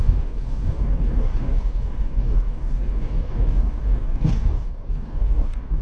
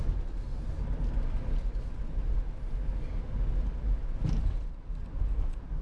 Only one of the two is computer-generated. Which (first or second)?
first